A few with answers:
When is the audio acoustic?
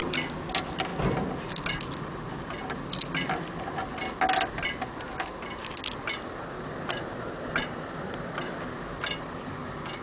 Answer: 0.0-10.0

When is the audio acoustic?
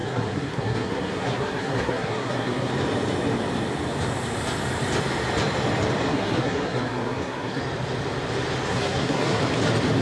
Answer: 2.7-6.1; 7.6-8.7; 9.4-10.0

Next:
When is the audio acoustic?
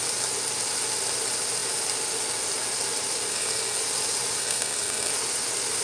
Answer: 0.0-3.3; 3.8-4.4; 5.1-5.8